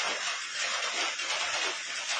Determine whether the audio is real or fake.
real